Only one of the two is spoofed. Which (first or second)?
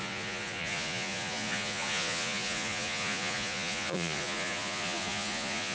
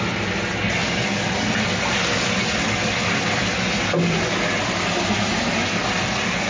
first